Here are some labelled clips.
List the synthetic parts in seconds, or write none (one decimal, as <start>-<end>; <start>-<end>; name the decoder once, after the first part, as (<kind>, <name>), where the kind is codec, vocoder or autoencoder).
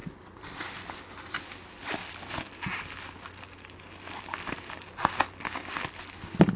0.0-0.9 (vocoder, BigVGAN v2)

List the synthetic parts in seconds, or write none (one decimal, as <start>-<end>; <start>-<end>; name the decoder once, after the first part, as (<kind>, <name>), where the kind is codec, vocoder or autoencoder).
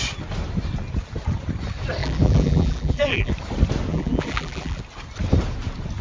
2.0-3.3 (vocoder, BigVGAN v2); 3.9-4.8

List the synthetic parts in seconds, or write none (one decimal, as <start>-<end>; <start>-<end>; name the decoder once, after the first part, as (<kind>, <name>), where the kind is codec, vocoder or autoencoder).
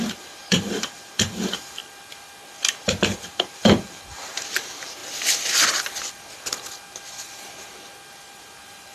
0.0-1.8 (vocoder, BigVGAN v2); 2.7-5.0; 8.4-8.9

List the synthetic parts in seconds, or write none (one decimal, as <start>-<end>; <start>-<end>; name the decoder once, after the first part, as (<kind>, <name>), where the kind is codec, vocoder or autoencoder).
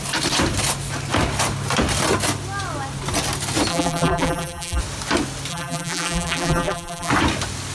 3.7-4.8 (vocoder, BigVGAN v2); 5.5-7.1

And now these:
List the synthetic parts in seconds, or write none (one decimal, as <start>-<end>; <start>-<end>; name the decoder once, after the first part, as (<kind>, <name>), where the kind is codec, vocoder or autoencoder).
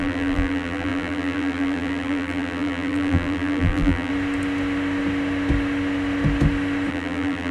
0.0-4.1 (vocoder, BigVGAN v2); 6.9-7.5